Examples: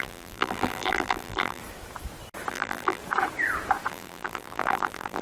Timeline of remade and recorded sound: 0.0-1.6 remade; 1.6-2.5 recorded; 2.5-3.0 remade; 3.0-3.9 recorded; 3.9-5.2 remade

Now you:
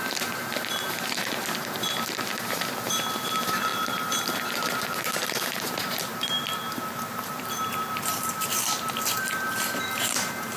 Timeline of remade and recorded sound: 0.0-10.6 remade

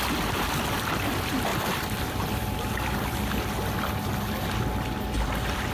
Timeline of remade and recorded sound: 0.0-1.5 recorded; 1.5-4.7 remade; 4.7-5.7 recorded

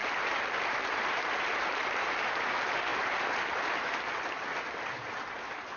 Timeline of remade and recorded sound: 0.0-5.8 remade

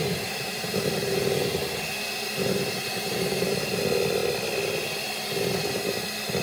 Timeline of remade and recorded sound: 0.0-3.8 remade; 3.8-6.4 recorded

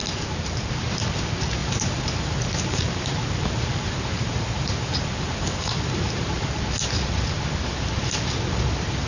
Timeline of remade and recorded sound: 0.0-0.7 remade; 0.7-1.6 recorded; 1.6-6.6 remade; 6.6-9.1 recorded

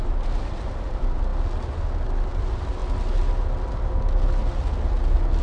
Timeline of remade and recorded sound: 0.0-1.3 remade; 1.3-2.3 recorded; 2.3-2.8 remade; 2.8-5.4 recorded